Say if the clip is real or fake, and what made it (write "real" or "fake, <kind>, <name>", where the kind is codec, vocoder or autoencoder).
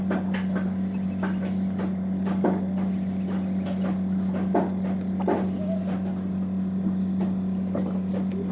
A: real